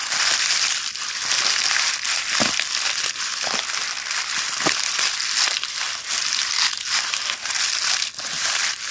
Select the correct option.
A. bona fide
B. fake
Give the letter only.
A